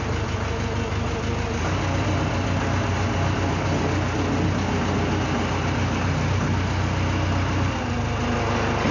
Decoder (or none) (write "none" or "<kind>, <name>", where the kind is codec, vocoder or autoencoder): none